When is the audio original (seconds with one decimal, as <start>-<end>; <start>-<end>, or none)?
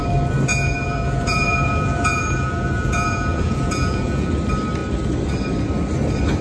0.0-0.5; 4.3-6.4